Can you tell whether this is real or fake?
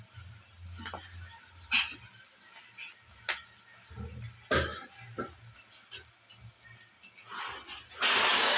real